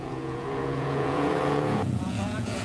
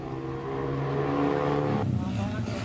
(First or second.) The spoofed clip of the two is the first